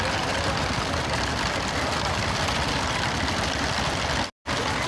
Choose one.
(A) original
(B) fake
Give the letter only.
A